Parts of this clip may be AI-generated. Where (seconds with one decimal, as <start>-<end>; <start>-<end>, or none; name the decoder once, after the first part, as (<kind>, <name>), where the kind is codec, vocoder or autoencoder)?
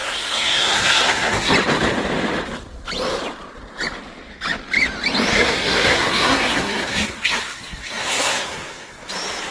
0.0-1.5 (codec, SNAC); 5.3-9.1